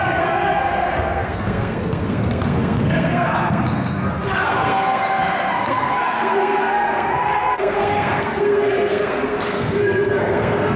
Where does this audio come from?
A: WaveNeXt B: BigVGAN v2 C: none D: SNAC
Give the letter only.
D